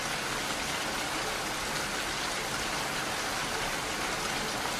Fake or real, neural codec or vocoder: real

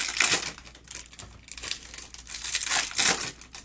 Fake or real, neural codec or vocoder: real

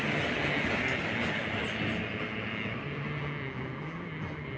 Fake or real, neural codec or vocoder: real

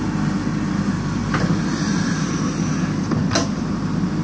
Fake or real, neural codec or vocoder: real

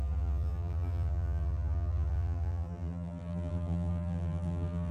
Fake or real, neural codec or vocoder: fake, vocoder, BigVGAN v2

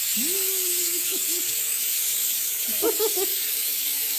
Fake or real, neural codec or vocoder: fake, codec, DAC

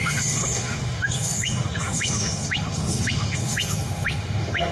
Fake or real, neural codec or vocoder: fake, autoencoder, DAC-VAE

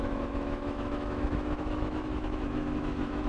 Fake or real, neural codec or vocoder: fake, autoencoder, DAC-VAE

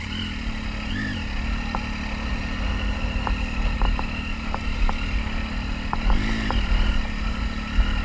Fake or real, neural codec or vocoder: real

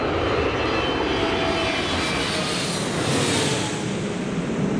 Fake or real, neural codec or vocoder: real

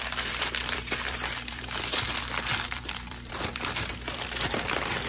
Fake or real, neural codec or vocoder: fake, vocoder, BigVGAN v2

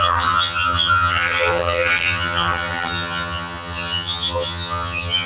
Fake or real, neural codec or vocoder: fake, vocoder, HiFi-GAN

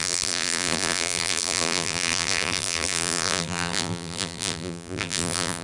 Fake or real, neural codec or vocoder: fake, vocoder, BigVGAN v2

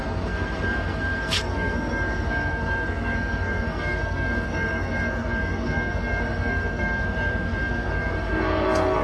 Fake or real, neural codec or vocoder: fake, codec, SNAC